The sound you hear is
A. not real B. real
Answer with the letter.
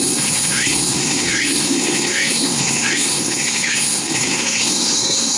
A